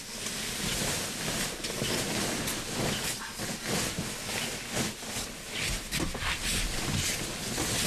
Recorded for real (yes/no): yes